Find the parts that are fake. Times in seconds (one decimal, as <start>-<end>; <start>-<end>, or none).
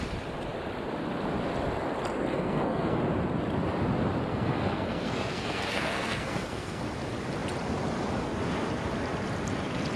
2.3-3.0; 4.3-6.8